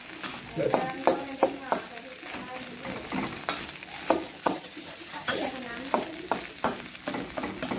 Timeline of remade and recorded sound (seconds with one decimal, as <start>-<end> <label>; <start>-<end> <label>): 0.0-4.4 recorded; 4.4-5.5 remade; 5.5-7.8 recorded